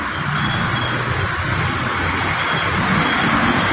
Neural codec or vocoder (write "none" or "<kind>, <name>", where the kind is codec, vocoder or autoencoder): none